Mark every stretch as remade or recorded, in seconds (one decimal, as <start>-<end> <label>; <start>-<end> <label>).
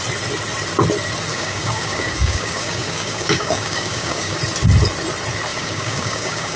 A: 0.0-1.3 recorded; 1.3-4.4 remade; 4.4-5.5 recorded; 5.5-6.6 remade